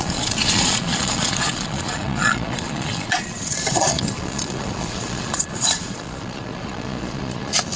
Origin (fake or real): fake